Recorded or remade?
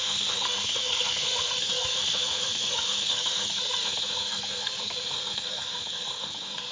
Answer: remade